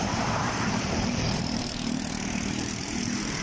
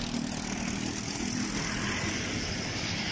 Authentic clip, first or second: second